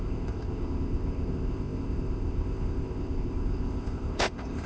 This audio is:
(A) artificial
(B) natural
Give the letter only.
A